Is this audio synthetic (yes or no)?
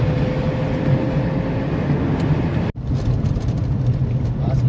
no